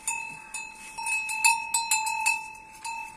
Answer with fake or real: real